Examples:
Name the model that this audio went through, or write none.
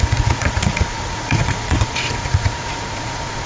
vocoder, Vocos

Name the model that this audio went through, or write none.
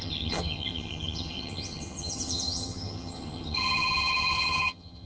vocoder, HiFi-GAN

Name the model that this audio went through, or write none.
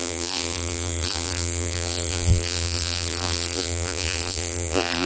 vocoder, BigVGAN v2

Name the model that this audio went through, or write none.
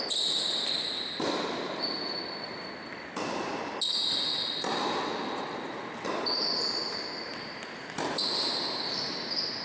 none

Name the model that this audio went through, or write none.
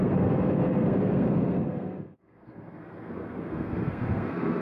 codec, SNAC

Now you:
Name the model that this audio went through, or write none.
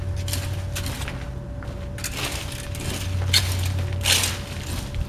none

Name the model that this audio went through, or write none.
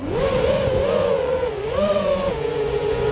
vocoder, Vocos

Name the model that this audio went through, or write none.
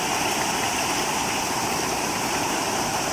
vocoder, BigVGAN v2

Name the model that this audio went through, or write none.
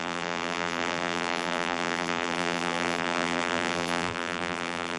vocoder, BigVGAN v2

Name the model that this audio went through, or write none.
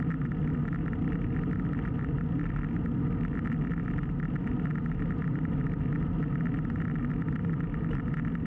none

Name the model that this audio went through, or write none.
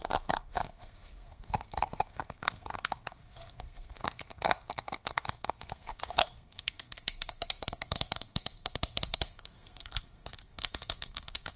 codec, SNAC